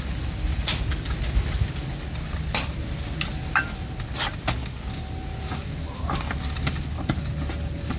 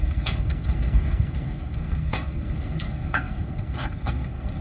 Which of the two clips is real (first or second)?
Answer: first